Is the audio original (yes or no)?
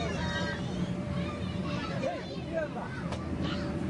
no